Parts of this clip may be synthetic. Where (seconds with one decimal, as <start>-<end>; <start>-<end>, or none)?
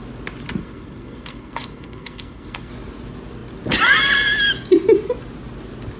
0.6-2.7